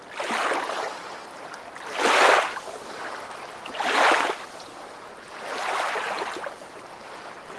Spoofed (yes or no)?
no